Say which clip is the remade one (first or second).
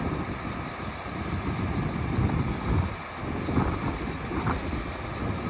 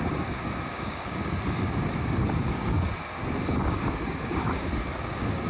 second